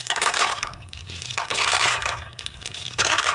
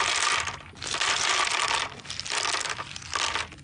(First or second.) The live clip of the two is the second